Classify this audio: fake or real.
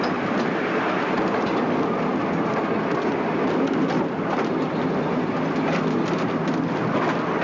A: real